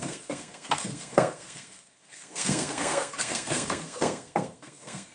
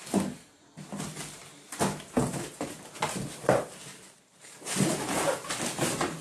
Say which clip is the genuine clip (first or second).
second